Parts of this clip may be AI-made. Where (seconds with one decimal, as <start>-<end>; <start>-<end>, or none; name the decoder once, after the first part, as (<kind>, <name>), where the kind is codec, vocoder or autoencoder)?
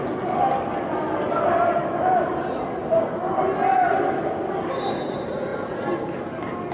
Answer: 1.8-2.3 (autoencoder, DAC-VAE)